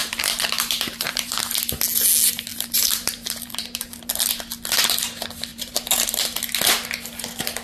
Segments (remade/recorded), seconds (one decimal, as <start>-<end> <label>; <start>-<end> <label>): 0.0-1.4 remade; 1.4-2.5 recorded; 2.5-4.3 remade; 4.3-5.5 recorded; 5.5-6.4 remade; 6.4-7.6 recorded